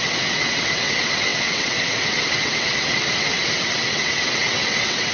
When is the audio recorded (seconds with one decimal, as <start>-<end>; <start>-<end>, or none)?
none